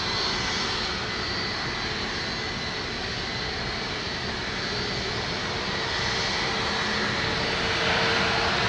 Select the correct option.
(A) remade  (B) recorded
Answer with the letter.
B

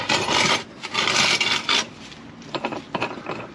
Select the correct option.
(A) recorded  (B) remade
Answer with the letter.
A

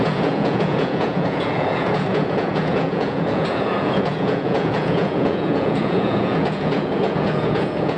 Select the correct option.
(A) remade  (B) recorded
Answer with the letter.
A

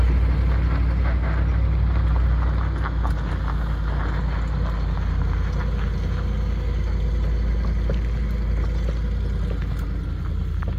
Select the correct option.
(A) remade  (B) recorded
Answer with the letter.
B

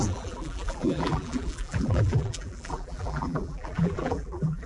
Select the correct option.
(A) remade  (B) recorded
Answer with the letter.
A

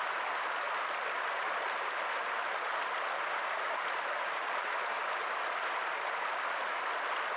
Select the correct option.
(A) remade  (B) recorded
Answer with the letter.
B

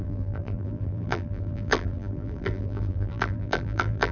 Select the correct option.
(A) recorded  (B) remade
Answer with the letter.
B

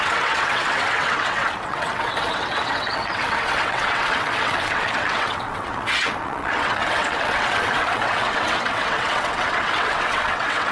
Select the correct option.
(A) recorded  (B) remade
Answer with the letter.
B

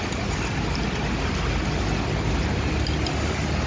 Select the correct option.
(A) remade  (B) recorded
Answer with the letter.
B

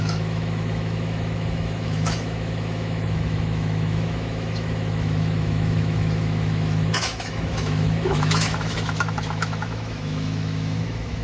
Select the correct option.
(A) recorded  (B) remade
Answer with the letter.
B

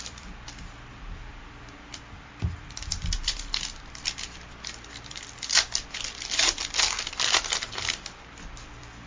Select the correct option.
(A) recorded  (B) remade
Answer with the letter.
B